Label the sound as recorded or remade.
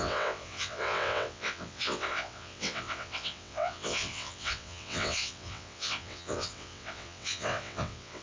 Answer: remade